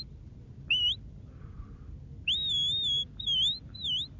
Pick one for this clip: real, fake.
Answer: real